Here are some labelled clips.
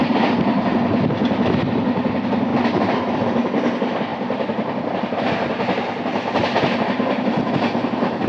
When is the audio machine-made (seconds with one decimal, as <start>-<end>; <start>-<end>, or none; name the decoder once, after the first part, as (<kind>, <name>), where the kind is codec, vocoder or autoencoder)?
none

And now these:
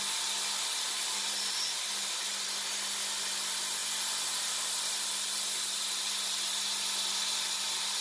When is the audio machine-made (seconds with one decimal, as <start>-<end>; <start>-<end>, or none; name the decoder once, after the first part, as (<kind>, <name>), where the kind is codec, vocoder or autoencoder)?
none

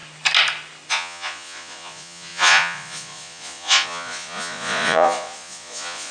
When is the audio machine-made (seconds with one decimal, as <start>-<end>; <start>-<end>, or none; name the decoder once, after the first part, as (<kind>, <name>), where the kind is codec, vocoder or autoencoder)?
0.9-6.1 (vocoder, Vocos)

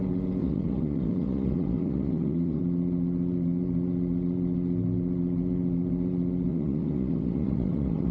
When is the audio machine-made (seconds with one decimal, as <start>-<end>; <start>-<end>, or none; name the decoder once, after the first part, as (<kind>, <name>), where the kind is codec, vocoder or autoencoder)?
0.4-2.6 (vocoder, Vocos); 6.5-8.1

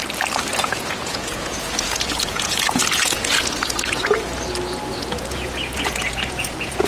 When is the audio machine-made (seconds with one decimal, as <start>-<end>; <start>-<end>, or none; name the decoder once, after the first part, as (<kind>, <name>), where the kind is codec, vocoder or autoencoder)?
0.5-4.3 (vocoder, Vocos); 4.9-6.9

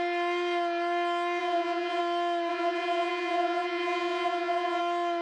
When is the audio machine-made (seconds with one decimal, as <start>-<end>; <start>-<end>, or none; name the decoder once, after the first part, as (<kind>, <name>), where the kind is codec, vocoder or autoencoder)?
1.4-2.0 (vocoder, Vocos); 2.5-4.8

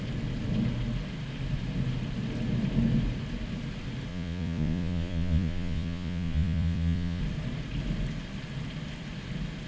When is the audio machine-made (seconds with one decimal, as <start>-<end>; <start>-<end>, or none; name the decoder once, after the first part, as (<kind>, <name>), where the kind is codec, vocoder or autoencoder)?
4.1-7.2 (vocoder, Vocos)